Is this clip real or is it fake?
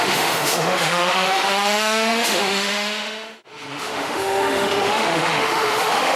fake